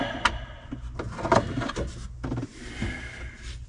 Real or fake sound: real